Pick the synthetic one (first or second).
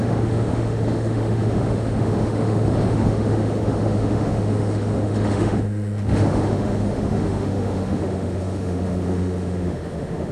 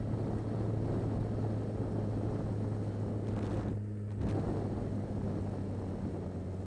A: first